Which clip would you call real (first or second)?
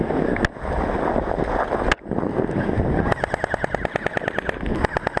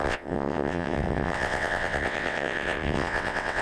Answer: first